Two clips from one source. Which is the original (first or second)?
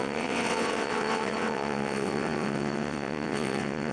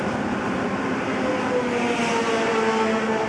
second